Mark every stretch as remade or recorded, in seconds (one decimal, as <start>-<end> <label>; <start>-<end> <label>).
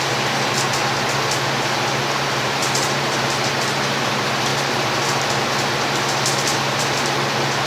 0.0-2.6 recorded; 2.6-3.2 remade; 3.2-7.7 recorded